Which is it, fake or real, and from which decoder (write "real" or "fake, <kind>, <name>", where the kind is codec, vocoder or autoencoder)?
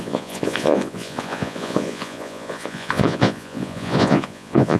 fake, vocoder, Vocos